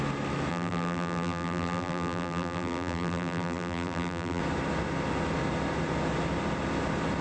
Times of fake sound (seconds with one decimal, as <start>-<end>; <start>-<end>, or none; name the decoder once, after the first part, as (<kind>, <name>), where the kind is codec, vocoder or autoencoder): 0.5-4.4 (vocoder, BigVGAN v2)